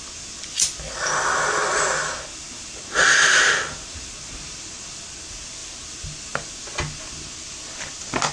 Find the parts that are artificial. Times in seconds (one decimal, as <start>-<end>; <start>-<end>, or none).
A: none